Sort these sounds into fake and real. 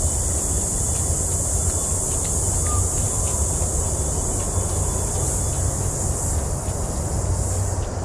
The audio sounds real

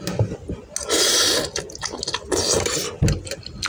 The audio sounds real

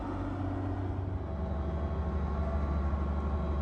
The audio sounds real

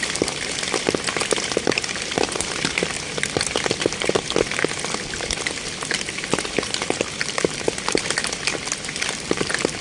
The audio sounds real